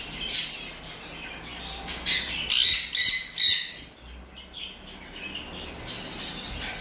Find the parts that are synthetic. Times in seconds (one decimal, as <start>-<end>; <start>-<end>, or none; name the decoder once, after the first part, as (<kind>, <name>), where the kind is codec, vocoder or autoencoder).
none